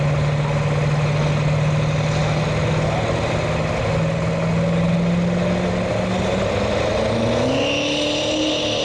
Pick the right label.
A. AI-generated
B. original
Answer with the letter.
B